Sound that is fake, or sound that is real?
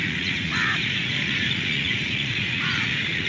fake